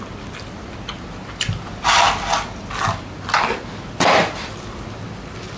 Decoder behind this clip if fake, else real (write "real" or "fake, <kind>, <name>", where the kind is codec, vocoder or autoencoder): real